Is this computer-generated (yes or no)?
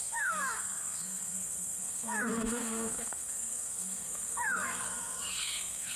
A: yes